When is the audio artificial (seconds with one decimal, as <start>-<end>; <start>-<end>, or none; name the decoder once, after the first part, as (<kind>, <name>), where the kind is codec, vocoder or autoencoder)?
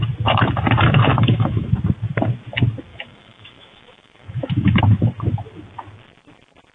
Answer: 1.1-1.7 (autoencoder, DAC-VAE); 2.9-4.8